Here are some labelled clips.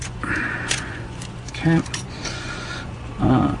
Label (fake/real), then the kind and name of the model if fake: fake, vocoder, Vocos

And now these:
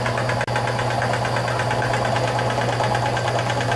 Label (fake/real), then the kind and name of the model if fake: real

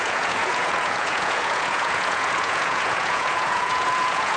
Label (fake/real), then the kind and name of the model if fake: fake, vocoder, Vocos